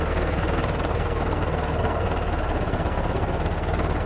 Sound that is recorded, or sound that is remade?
remade